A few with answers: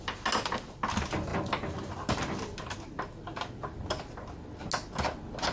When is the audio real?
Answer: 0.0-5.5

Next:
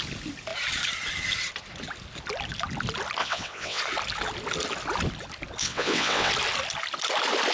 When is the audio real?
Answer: 0.0-3.2; 3.8-5.6; 6.3-7.5

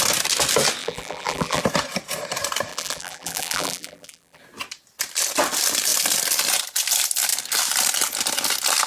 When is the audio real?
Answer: 0.0-0.8; 1.6-2.7; 4.4-8.9

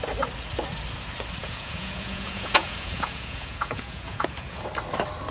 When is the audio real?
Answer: 0.0-1.4; 4.6-5.3

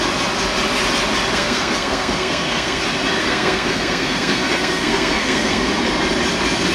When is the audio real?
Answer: 0.0-1.3; 2.8-3.2; 5.7-6.7

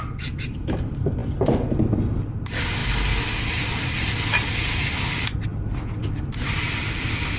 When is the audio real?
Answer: 0.0-7.4

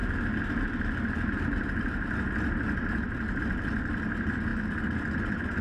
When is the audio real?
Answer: 0.0-5.6